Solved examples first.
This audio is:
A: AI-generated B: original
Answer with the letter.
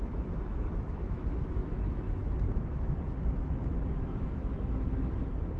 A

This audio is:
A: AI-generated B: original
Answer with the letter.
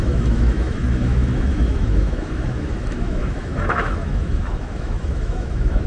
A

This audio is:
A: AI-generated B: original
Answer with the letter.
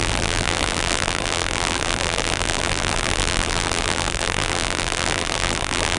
A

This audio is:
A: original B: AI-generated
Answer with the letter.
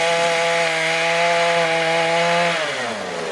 A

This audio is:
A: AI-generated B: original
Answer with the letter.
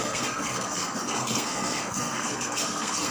A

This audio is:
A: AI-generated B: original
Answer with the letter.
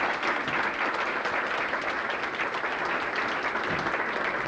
B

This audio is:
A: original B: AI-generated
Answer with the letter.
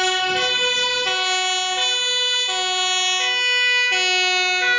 A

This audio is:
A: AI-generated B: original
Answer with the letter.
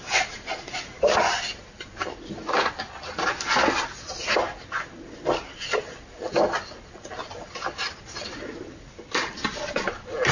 B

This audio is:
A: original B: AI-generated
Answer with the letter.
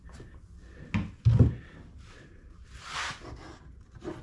A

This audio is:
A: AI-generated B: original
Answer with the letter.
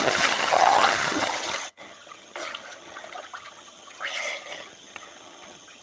A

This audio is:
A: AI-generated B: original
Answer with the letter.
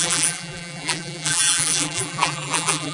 A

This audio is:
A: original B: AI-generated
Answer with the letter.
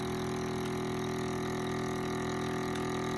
A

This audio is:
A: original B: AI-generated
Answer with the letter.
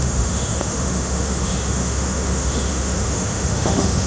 B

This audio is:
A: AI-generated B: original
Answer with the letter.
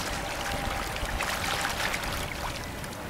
B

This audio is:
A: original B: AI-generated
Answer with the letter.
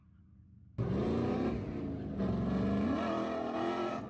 A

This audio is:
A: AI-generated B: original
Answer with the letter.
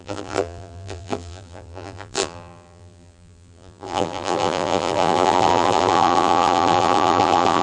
A